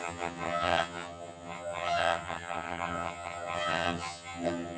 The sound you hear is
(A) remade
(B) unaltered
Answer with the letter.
A